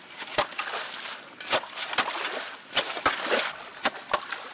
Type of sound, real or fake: real